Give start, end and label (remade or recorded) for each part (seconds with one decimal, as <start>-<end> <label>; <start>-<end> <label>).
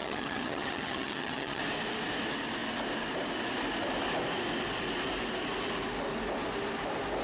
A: 0.0-1.6 remade; 1.6-7.2 recorded